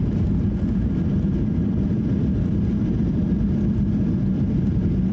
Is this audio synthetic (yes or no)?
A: yes